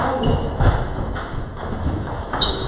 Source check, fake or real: fake